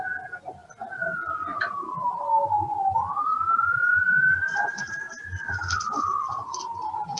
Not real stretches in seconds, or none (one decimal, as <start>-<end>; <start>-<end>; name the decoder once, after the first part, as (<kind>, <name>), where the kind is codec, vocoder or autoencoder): none